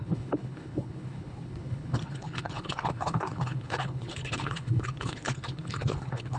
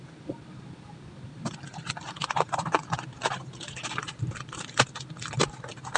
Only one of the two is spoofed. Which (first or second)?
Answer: first